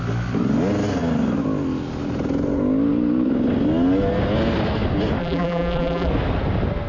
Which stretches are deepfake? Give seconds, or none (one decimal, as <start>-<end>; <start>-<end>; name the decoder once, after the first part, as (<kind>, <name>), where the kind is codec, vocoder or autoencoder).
5.2-6.1 (vocoder, BigVGAN v2)